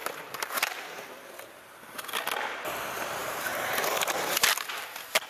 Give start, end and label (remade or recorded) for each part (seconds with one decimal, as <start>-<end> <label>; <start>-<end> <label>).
0.0-3.2 recorded; 3.2-4.0 remade; 4.0-5.3 recorded